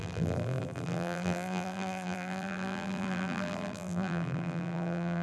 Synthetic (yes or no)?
yes